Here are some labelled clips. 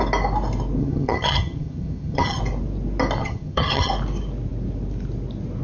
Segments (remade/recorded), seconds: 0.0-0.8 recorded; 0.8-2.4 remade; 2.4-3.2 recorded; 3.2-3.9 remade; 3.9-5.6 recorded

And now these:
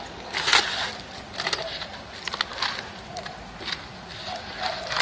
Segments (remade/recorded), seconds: 0.0-5.0 recorded

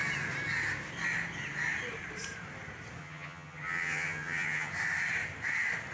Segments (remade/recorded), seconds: 0.0-3.0 recorded; 3.0-4.7 remade; 4.7-5.9 recorded

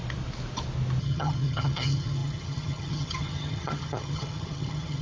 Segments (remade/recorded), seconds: 0.0-1.0 recorded; 1.0-5.0 remade